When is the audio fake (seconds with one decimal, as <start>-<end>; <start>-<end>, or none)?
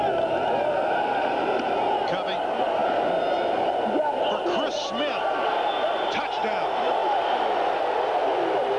none